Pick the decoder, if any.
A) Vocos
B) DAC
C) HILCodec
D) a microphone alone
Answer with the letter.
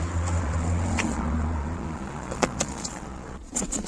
A